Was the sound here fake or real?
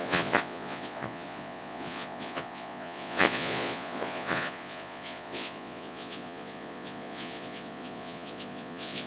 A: fake